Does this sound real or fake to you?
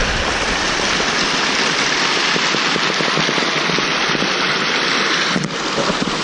real